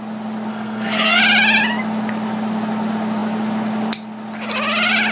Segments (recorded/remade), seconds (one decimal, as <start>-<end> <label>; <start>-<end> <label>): 0.0-0.5 recorded; 0.5-1.2 remade; 1.2-5.1 recorded